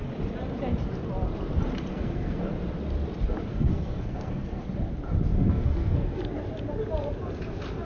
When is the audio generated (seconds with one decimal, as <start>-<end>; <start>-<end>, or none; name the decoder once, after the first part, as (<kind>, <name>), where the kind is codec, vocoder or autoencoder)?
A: 1.9-2.4 (codec, SNAC); 3.5-4.6; 5.3-6.2